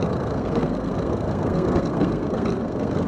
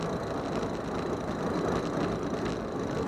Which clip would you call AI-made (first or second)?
first